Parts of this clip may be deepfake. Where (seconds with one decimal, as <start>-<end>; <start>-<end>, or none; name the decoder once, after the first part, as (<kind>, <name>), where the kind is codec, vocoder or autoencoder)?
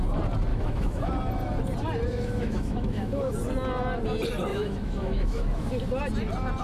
0.5-1.1 (autoencoder, DAC-VAE); 2.1-3.3; 4.5-5.7